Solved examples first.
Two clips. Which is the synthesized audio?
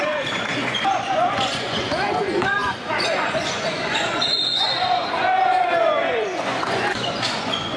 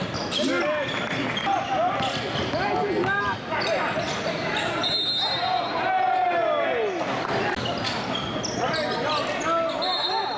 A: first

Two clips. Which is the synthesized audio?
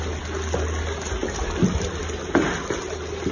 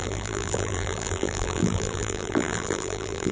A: second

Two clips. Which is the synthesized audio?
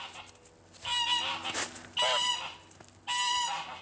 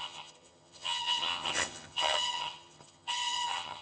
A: second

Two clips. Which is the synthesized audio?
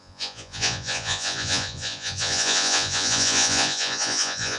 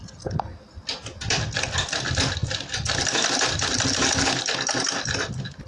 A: first